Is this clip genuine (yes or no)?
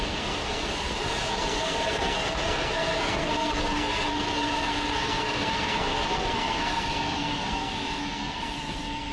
no